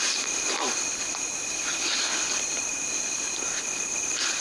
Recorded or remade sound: recorded